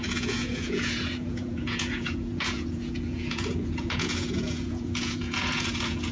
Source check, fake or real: fake